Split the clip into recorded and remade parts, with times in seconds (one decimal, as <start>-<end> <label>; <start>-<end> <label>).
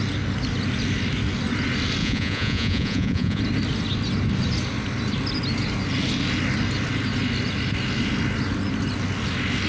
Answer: 0.0-2.0 recorded; 2.0-3.4 remade; 3.4-9.7 recorded